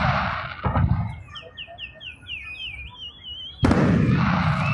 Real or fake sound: real